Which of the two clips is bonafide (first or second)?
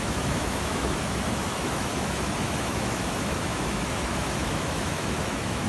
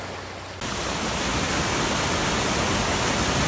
second